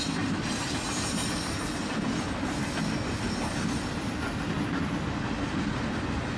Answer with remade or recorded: recorded